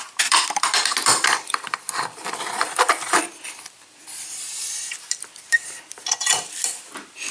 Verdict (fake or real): fake